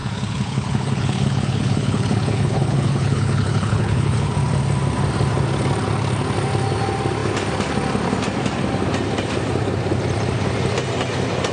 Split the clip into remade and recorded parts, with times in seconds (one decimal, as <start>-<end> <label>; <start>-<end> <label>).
0.0-4.3 remade; 4.3-11.5 recorded